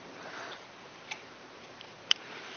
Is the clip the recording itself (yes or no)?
no